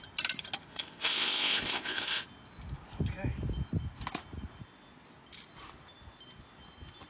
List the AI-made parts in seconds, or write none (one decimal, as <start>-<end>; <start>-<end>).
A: 0.7-2.2